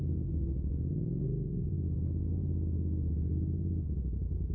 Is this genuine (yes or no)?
no